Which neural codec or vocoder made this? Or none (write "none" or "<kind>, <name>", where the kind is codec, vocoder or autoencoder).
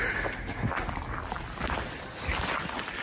none